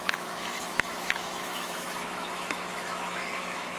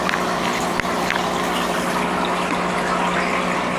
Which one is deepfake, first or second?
first